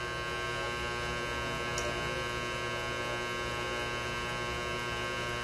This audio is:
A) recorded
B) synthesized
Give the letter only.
A